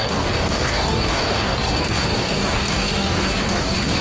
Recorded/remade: remade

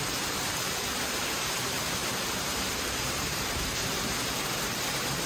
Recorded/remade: remade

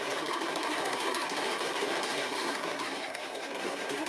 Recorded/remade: remade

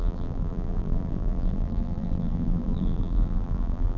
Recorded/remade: remade